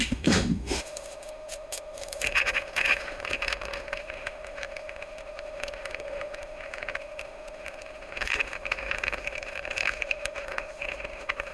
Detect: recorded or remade remade